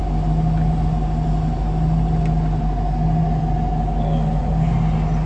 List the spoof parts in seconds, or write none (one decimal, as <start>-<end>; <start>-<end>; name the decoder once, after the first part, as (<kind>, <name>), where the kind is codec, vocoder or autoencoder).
none